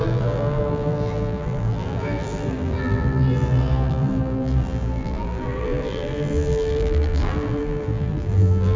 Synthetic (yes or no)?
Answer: yes